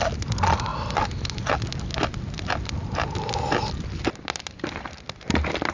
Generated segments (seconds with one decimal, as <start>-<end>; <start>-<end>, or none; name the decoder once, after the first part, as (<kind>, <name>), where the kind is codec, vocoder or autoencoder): none